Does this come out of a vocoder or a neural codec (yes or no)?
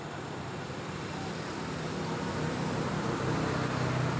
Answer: yes